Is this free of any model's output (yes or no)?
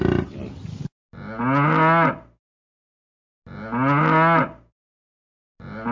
yes